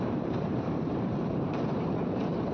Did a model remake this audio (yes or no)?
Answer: yes